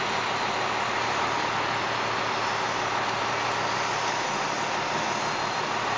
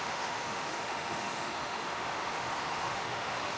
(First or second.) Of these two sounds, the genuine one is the first